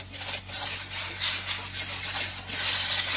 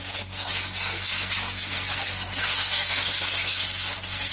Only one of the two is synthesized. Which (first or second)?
second